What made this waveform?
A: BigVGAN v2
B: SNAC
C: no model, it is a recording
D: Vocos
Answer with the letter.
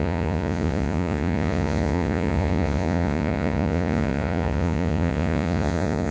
D